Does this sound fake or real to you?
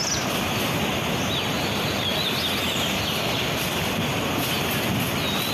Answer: real